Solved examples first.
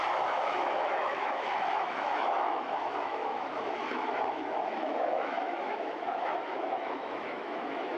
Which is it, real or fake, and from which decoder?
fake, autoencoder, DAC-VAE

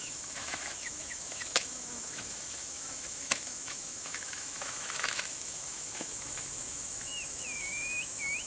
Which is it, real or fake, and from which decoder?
fake, autoencoder, DAC-VAE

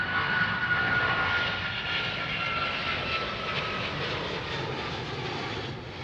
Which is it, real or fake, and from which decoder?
real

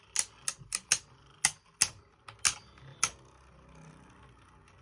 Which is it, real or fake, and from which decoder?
real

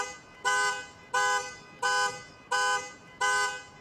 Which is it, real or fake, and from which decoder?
real